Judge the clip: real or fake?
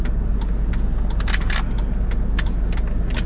real